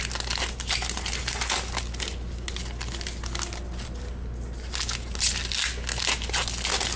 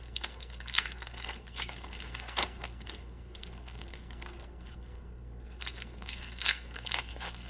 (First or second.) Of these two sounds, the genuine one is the first